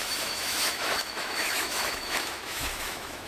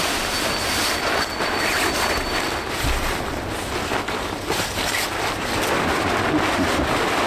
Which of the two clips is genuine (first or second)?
second